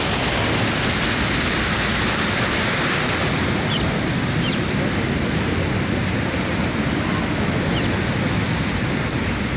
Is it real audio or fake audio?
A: real